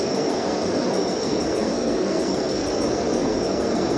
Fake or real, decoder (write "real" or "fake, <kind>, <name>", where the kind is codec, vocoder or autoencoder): fake, codec, SNAC